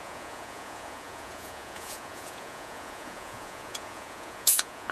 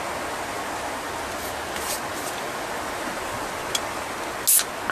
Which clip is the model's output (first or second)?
first